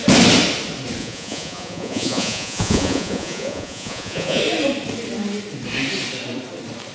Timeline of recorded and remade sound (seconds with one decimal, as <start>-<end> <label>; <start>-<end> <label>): 0.0-1.0 recorded; 1.0-4.4 remade; 4.4-6.9 recorded